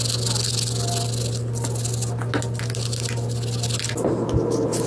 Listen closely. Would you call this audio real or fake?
real